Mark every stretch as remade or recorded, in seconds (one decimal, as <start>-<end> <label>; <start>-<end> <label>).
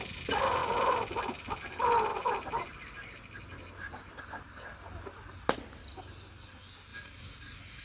0.0-2.1 recorded; 2.1-4.7 remade; 4.7-6.9 recorded; 6.9-7.8 remade